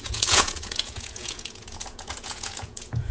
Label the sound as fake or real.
fake